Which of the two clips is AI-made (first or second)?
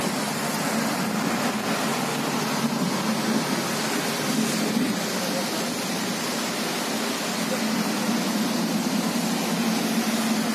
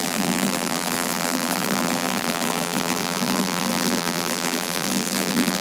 second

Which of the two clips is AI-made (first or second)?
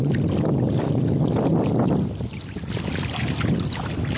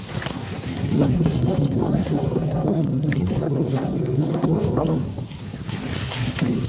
second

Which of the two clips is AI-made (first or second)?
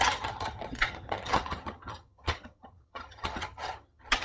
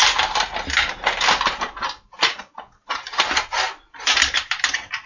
first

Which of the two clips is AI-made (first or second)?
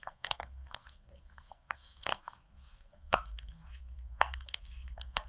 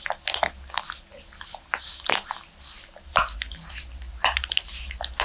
first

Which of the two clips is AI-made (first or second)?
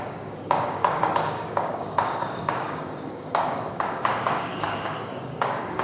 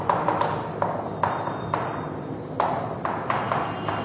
first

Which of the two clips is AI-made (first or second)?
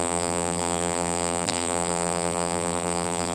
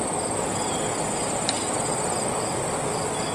first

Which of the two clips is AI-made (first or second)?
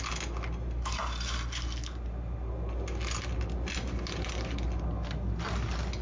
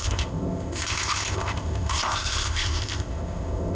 second